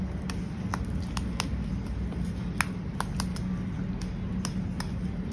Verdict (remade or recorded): recorded